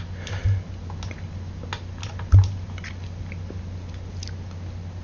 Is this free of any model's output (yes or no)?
yes